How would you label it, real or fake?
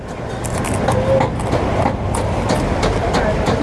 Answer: real